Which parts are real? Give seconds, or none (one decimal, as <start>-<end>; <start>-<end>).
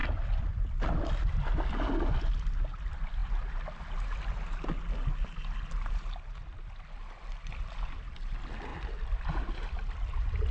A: 0.0-10.5